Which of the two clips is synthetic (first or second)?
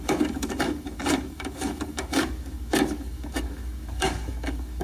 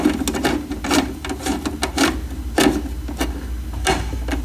first